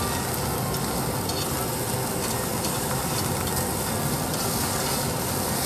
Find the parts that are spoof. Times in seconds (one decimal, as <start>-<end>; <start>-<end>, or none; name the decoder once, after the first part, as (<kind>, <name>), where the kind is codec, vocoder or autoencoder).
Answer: 2.5-4.7 (vocoder, BigVGAN v2)